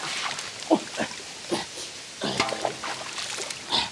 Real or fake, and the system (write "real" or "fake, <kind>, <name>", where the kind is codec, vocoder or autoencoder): real